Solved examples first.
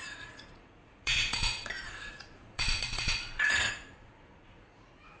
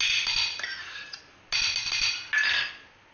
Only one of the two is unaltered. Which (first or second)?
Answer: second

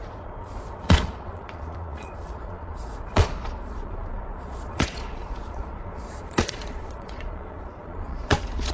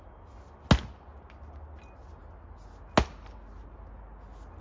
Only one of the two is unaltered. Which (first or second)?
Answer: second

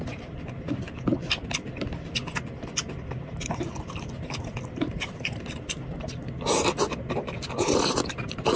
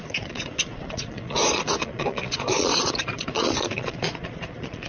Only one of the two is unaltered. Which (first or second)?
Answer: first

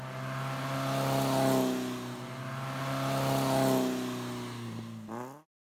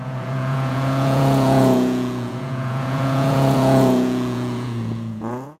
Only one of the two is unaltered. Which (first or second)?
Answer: first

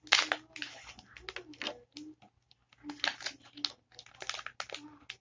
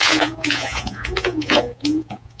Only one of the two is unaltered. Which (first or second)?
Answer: first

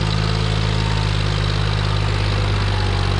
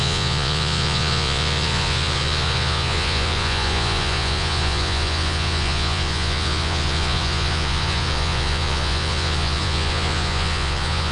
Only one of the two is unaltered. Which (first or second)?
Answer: first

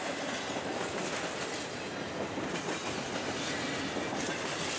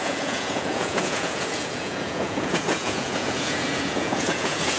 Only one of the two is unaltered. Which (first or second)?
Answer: first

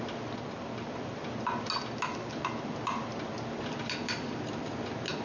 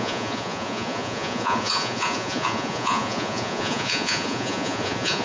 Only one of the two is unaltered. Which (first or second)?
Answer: first